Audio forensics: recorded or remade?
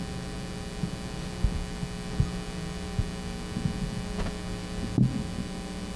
recorded